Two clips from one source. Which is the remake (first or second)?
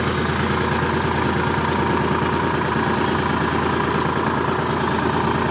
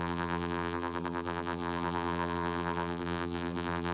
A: second